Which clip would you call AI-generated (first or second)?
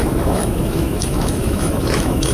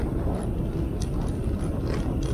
first